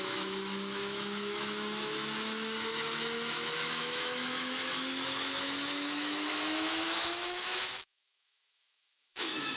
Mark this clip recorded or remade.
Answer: remade